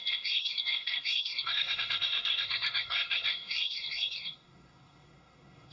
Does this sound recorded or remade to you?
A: remade